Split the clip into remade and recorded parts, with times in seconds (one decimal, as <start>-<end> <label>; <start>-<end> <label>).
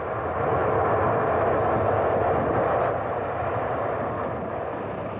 0.0-5.2 recorded